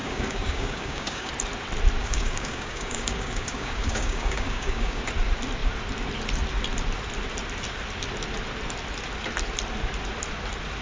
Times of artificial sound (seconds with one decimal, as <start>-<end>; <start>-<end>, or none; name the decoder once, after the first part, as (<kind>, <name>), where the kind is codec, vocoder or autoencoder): 0.0-1.3 (codec, DAC); 2.0-5.0